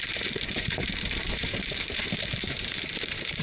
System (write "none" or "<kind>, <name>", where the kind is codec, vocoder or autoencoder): vocoder, BigVGAN v2